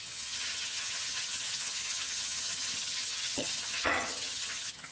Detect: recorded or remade remade